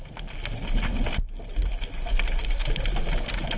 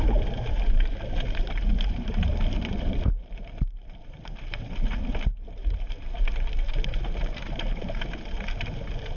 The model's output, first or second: second